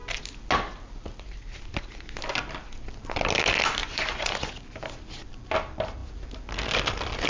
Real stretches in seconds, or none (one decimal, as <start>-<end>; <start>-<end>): 0.0-3.8; 4.5-7.3